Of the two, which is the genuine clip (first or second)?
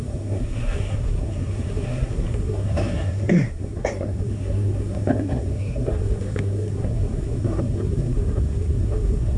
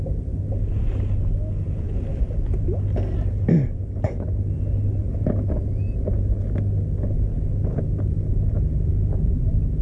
second